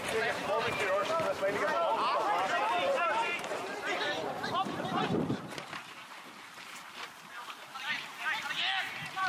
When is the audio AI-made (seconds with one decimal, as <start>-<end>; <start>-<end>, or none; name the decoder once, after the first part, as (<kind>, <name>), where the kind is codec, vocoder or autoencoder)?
0.0-1.0 (vocoder, BigVGAN v2); 2.4-9.3